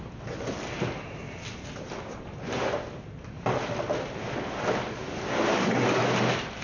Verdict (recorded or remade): recorded